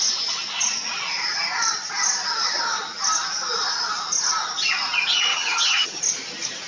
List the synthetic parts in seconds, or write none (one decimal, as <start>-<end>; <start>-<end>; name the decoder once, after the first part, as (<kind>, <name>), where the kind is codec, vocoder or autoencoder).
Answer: 5.3-6.0 (vocoder, HiFi-GAN)